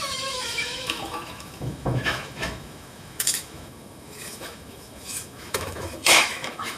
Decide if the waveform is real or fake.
fake